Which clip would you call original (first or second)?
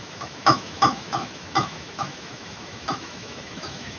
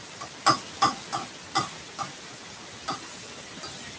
second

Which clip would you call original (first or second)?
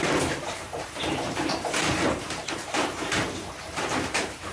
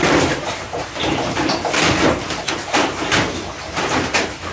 second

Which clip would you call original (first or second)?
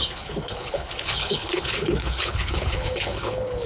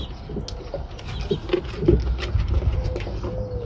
second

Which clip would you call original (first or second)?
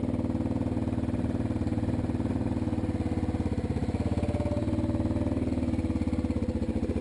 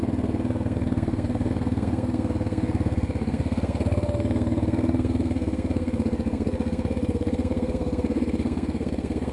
first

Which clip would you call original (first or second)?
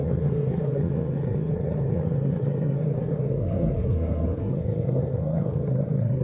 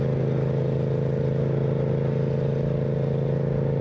second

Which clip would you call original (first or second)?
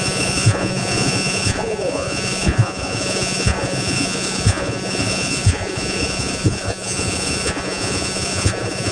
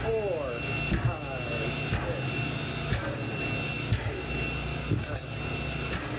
second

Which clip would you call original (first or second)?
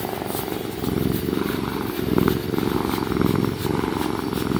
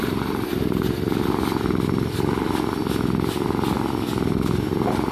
second